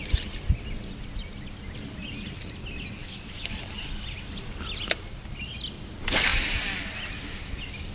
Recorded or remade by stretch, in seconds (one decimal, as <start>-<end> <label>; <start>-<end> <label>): 0.0-3.0 recorded; 3.0-3.6 remade; 3.6-7.9 recorded